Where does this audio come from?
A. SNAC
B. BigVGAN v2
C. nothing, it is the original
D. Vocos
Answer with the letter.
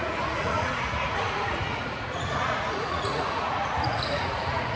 D